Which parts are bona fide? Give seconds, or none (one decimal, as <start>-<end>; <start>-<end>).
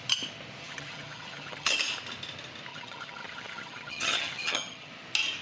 0.0-0.6; 1.8-2.7; 4.9-5.4